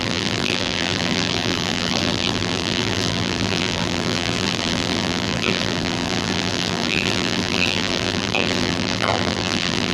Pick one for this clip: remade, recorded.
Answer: remade